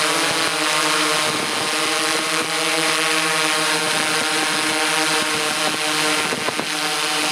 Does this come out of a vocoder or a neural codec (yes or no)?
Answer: no